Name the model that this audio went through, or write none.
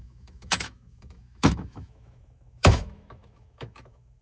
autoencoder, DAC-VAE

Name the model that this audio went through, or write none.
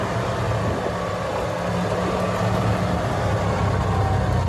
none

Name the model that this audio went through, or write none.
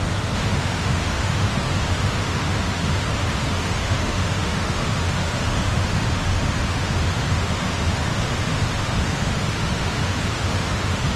autoencoder, DAC-VAE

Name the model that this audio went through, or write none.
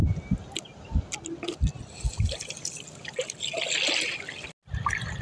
none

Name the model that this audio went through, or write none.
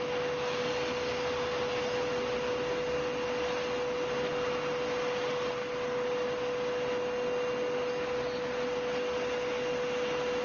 none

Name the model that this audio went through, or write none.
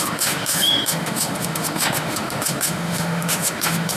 autoencoder, DAC-VAE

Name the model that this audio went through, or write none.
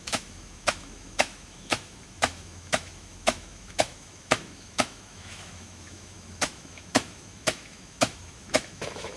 autoencoder, DAC-VAE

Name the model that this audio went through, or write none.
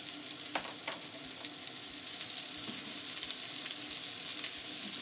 none